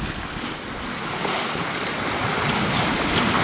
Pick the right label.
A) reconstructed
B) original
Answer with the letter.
B